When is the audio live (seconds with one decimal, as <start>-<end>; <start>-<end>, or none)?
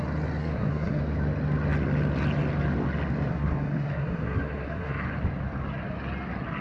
0.0-0.4; 1.0-3.3; 5.0-6.6